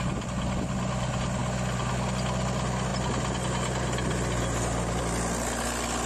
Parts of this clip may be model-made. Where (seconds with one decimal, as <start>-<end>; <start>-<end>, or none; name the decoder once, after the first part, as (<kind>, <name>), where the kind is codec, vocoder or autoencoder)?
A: none